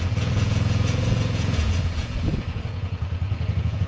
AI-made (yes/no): yes